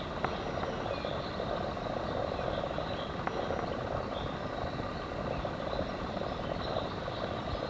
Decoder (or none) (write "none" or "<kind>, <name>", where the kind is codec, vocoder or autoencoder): none